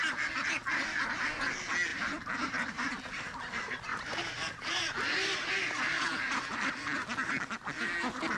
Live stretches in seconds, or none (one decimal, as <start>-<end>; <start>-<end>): 0.0-1.9; 2.9-3.9; 6.7-8.4